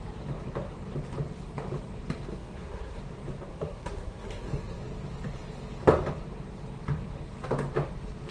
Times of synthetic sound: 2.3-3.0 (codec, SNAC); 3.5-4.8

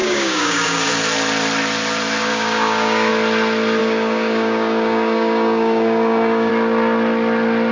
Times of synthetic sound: 0.0-0.9 (codec, DAC); 2.3-3.1; 3.8-6.5